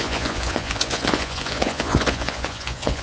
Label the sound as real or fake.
fake